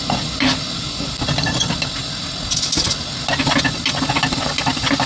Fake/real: real